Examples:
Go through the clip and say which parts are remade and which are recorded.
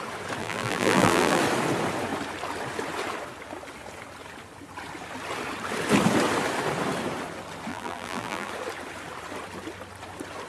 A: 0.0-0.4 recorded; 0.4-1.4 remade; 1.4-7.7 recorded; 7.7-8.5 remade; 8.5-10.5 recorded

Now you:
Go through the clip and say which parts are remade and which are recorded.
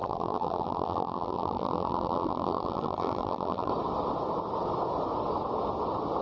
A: 0.0-3.7 remade; 3.7-6.2 recorded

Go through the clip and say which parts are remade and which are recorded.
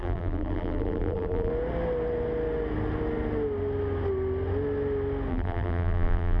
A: 0.0-1.5 remade; 1.5-5.3 recorded; 5.3-6.4 remade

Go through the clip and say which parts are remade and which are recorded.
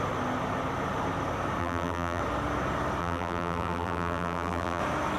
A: 0.0-1.6 recorded; 1.6-2.2 remade; 2.2-3.0 recorded; 3.0-4.8 remade; 4.8-5.2 recorded